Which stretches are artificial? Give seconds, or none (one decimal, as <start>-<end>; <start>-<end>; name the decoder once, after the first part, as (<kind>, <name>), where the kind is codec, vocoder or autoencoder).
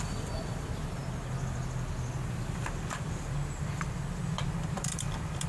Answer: 0.0-1.0 (vocoder, BigVGAN v2); 4.2-5.5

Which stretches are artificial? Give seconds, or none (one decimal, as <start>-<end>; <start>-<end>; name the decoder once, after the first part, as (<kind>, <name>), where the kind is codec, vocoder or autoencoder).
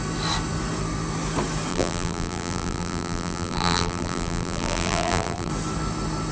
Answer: 1.7-5.5 (vocoder, BigVGAN v2)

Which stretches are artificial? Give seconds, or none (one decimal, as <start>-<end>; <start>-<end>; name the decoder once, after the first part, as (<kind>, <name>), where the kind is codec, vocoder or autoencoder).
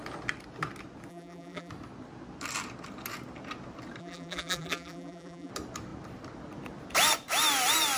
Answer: 1.1-1.7 (vocoder, BigVGAN v2); 4.0-5.5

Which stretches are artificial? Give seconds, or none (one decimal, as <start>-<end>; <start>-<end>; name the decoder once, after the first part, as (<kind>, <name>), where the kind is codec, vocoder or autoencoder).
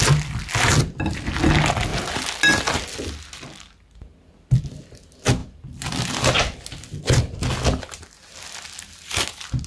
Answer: none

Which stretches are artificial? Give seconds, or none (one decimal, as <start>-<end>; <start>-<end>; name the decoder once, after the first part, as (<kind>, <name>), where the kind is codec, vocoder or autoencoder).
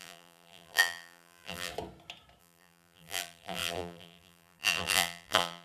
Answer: 0.0-1.7 (vocoder, BigVGAN v2); 2.4-5.6